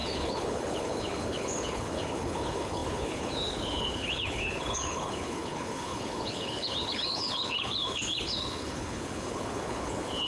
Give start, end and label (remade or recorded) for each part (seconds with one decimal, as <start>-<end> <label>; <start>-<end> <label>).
0.0-10.3 remade